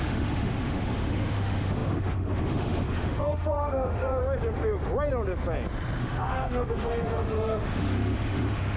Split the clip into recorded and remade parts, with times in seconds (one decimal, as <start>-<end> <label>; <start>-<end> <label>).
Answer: 0.0-4.2 remade; 4.2-6.0 recorded; 6.0-8.8 remade